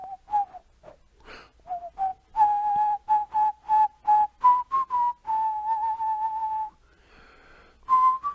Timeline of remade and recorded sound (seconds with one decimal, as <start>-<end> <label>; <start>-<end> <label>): 0.0-8.3 recorded